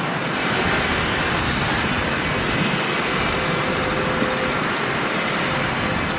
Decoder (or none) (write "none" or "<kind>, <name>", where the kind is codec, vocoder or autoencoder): none